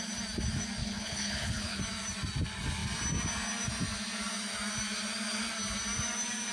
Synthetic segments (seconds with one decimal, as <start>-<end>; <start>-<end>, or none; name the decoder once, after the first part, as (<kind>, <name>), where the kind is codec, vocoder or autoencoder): 0.8-1.8 (codec, HILCodec)